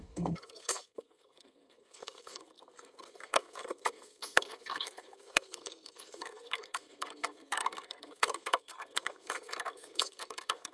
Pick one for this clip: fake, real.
fake